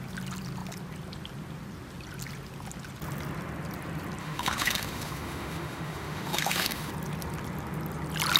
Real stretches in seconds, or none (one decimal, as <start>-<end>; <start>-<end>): 0.0-4.2; 6.9-8.4